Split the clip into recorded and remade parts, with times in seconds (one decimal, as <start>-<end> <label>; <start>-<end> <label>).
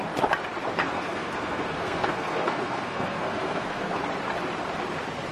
0.0-0.8 recorded; 0.8-4.0 remade; 4.0-5.3 recorded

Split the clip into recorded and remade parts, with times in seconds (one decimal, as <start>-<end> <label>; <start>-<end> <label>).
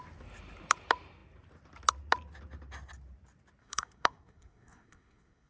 0.0-3.6 recorded; 3.6-5.5 remade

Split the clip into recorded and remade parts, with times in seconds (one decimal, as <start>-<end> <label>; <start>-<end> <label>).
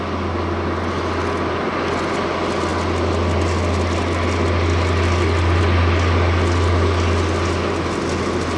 0.0-8.6 recorded